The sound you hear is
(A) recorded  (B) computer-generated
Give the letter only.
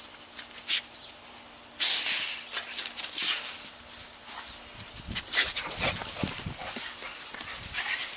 A